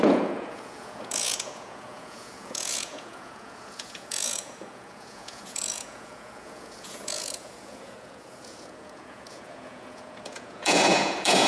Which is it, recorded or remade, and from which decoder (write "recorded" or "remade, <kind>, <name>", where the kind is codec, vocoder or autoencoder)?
remade, vocoder, Vocos